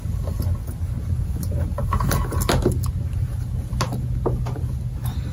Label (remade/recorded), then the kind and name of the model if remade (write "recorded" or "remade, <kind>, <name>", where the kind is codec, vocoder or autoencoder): recorded